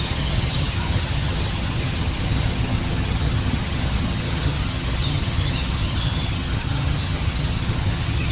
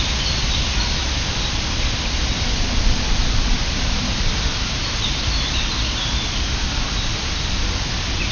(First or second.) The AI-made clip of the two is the first